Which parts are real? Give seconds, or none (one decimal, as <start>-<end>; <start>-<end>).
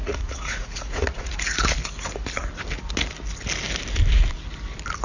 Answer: 1.3-5.0